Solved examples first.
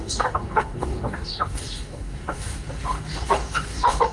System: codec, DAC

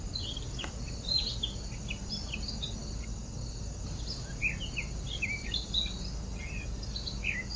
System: none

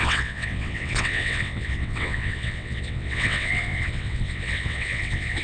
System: vocoder, WaveNeXt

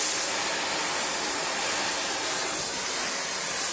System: none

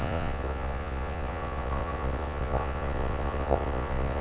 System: vocoder, Vocos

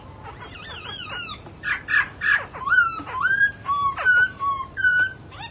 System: vocoder, BigVGAN v2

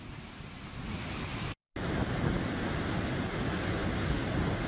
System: none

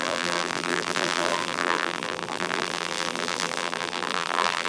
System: vocoder, BigVGAN v2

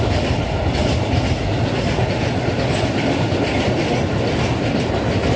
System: none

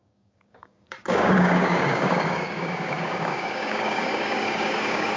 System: codec, DAC